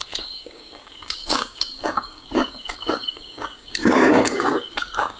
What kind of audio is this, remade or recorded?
remade